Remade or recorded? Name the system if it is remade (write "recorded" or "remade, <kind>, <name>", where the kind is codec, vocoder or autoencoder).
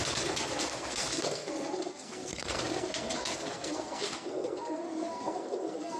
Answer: remade, codec, SNAC